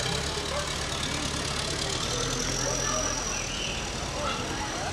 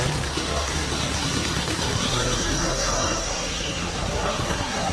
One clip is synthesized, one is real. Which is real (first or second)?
first